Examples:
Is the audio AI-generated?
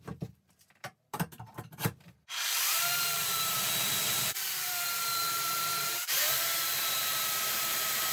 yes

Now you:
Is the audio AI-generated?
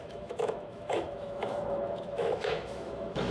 yes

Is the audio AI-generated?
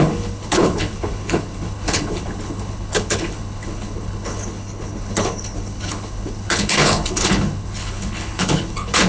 yes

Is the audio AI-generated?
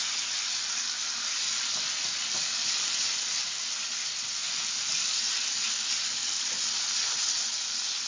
no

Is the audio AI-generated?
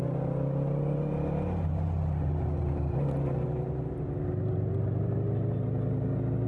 no